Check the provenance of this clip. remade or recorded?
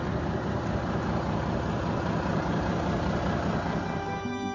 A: remade